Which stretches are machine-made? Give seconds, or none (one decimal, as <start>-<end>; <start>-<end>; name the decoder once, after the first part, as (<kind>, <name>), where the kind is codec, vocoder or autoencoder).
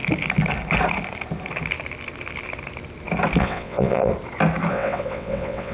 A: 3.4-4.1 (vocoder, WaveNeXt); 4.7-5.7